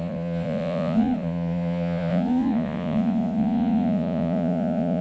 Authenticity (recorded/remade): remade